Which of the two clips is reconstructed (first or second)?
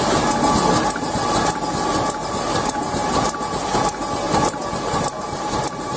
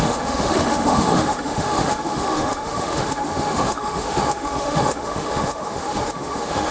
second